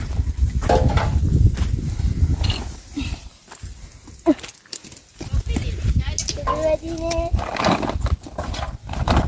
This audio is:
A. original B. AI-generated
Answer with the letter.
A